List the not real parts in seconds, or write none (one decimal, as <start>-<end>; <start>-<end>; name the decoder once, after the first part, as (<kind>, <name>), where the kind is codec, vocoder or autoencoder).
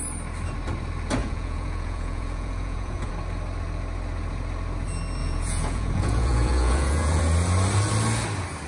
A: 1.2-3.1 (vocoder, Vocos); 5.2-7.2